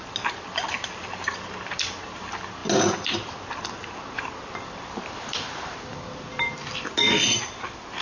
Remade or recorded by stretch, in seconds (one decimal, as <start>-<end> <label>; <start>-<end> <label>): 0.0-8.0 recorded